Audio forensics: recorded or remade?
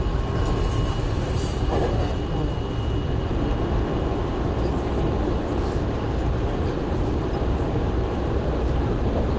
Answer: recorded